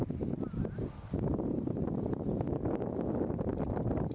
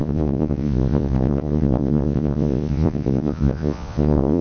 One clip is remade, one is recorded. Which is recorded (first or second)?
first